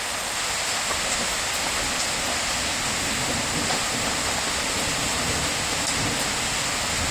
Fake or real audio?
real